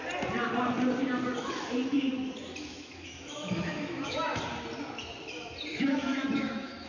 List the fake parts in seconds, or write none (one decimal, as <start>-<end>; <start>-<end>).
1.4-2.1; 2.7-4.4; 5.7-6.9